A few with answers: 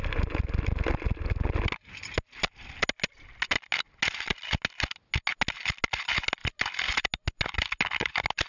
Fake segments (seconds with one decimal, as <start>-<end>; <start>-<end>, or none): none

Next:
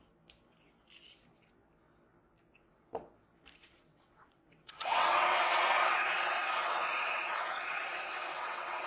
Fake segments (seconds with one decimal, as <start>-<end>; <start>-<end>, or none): 2.5-3.1; 3.6-8.9

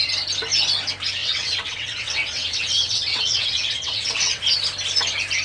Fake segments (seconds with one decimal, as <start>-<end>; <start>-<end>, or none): 1.2-4.4